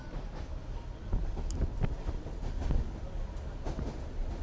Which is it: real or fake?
real